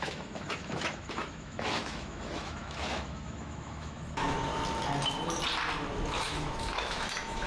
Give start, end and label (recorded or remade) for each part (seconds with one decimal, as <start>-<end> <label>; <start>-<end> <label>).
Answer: 0.0-4.5 remade; 4.5-6.1 recorded; 6.1-7.5 remade